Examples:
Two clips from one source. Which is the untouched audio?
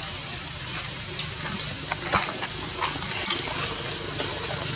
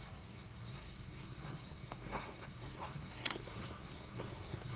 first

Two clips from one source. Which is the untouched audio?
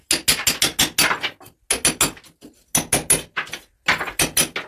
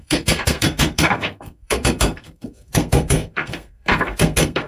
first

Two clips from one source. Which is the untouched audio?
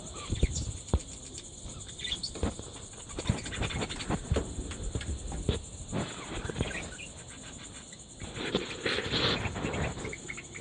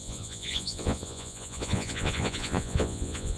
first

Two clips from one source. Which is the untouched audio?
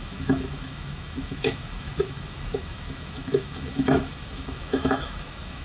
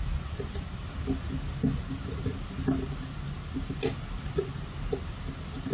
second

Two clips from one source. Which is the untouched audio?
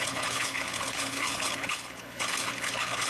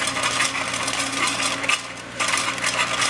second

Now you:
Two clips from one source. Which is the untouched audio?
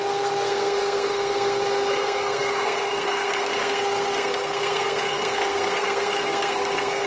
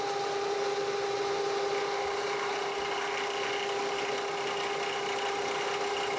second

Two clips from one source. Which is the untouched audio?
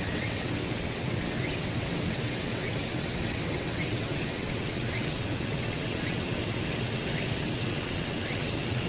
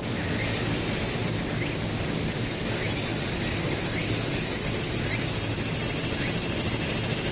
second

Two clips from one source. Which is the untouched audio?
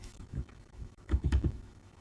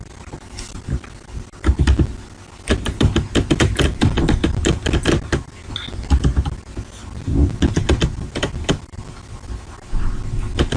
second